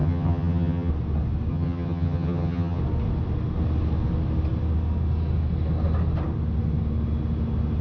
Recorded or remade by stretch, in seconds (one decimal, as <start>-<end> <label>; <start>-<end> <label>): 0.0-0.9 remade; 0.9-1.5 recorded; 1.5-2.8 remade; 2.8-7.8 recorded